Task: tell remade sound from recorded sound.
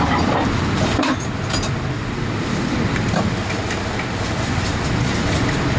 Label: remade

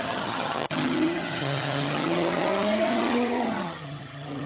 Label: remade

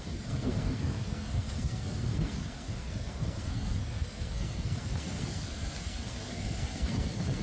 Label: remade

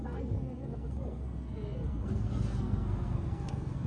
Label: remade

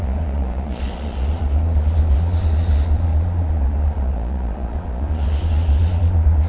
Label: remade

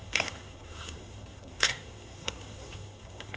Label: remade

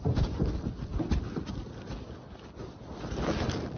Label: recorded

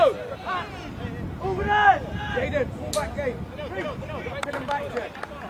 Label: recorded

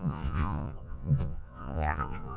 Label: remade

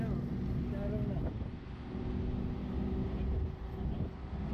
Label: recorded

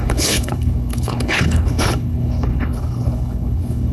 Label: remade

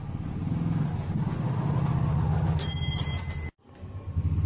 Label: recorded